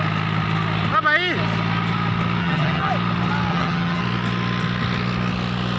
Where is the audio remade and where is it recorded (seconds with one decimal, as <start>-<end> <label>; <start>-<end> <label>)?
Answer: 0.0-2.4 recorded; 2.4-2.9 remade; 2.9-3.5 recorded; 3.5-4.0 remade; 4.0-5.8 recorded